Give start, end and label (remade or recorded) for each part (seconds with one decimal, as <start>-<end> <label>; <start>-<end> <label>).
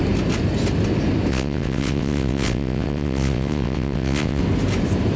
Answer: 0.0-1.3 recorded; 1.3-4.4 remade; 4.4-5.2 recorded